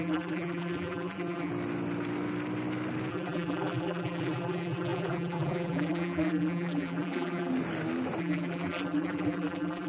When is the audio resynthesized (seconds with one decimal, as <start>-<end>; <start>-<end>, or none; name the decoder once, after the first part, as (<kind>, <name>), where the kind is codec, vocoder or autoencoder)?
0.0-1.5 (vocoder, BigVGAN v2); 3.1-7.5; 8.2-9.9